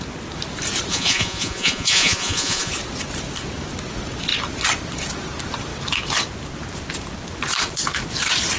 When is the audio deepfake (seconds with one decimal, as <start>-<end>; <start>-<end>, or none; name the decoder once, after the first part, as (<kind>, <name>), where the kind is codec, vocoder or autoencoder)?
0.9-2.7 (vocoder, Vocos)